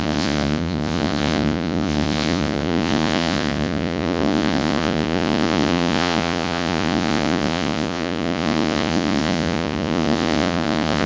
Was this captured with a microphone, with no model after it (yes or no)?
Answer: no